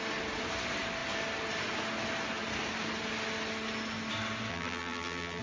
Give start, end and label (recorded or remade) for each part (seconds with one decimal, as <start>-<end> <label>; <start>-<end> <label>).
0.0-4.5 recorded; 4.5-5.4 remade